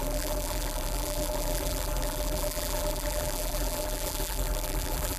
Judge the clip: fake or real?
fake